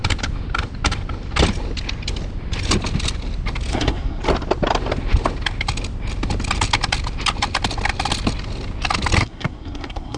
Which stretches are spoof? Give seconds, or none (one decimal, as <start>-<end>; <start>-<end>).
3.7-4.2; 9.2-10.2